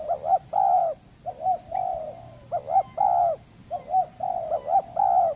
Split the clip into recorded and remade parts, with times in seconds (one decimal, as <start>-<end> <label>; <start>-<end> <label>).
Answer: 0.0-0.8 remade; 0.8-1.3 recorded; 1.3-1.9 remade; 1.9-5.4 recorded